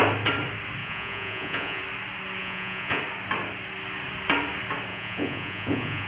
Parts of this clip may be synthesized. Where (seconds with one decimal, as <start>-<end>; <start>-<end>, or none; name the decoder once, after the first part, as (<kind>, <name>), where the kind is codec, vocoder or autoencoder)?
0.8-1.8 (vocoder, Vocos); 2.4-3.0; 4.9-6.1